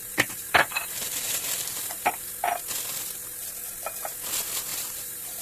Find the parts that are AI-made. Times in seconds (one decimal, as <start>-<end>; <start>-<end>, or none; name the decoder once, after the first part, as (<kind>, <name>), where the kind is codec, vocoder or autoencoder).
0.0-2.3 (vocoder, BigVGAN v2); 4.7-5.4